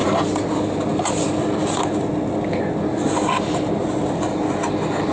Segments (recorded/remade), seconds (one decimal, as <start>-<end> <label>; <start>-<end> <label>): 0.0-5.1 recorded